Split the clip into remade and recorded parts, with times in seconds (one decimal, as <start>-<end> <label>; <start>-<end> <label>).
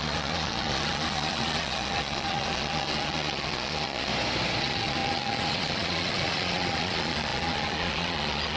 0.0-4.1 remade; 4.1-4.6 recorded; 4.6-8.6 remade